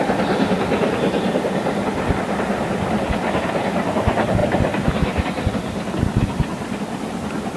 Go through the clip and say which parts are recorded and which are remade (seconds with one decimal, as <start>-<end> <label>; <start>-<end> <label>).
0.0-7.6 recorded